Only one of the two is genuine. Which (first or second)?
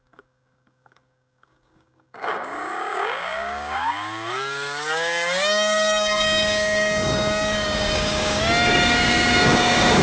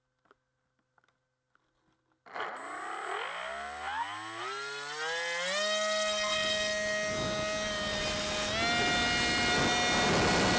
second